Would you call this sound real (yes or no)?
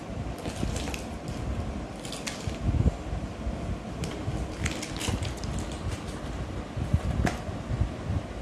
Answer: yes